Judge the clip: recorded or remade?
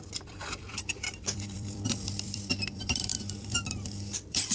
remade